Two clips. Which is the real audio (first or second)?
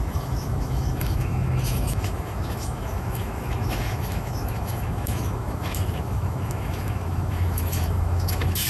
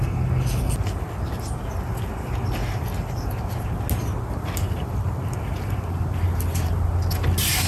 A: second